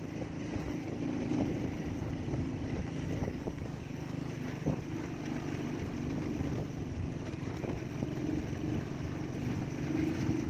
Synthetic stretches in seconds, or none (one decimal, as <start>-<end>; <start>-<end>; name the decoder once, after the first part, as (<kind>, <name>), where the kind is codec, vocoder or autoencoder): 3.2-4.3 (codec, DAC)